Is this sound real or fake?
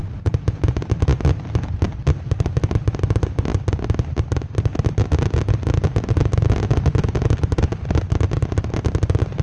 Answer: real